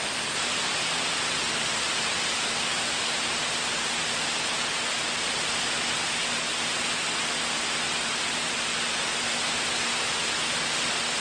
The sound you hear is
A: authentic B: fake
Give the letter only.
A